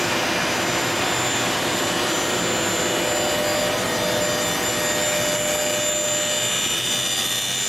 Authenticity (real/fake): real